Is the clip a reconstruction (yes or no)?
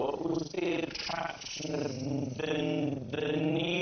no